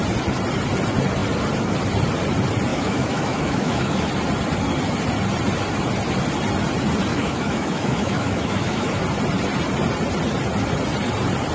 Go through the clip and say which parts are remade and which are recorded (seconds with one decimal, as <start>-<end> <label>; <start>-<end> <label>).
0.0-2.7 recorded; 2.7-4.1 remade; 4.1-7.1 recorded; 7.1-9.0 remade; 9.0-11.5 recorded